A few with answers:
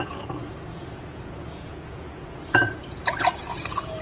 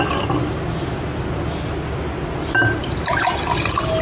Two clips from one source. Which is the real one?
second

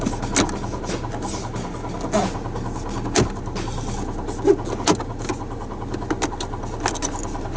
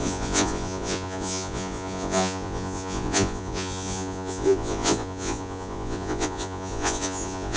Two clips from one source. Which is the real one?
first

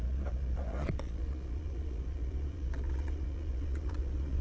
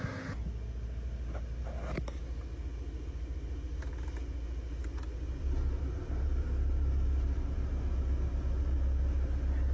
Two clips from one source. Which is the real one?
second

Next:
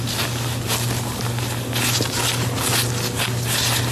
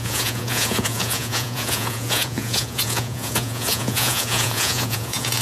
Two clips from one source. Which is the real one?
first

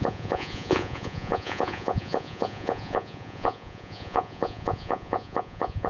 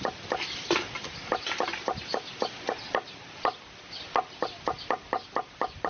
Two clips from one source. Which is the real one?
second